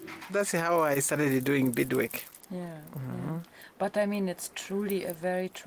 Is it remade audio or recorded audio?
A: recorded